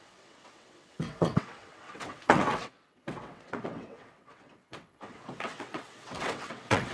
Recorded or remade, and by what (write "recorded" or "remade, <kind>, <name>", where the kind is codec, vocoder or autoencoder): remade, vocoder, WaveNeXt